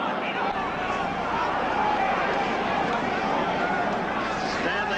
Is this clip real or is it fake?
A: fake